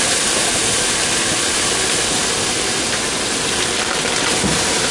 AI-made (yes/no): no